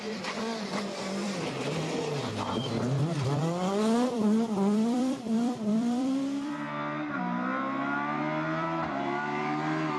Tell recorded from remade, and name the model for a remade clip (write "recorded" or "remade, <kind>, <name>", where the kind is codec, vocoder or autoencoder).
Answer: remade, vocoder, BigVGAN v2